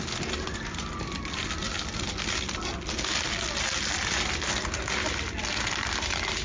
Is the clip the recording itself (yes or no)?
yes